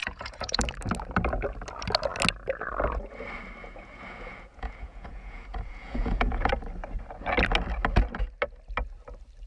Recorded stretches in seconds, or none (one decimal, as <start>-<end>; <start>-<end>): 0.6-3.6; 6.5-9.5